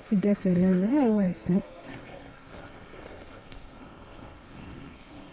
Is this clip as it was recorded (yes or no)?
no